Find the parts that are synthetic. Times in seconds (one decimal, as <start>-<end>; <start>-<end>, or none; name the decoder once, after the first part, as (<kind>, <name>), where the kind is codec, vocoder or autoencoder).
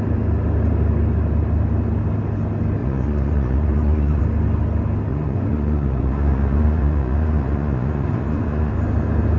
2.8-4.2 (vocoder, Vocos); 5.1-8.7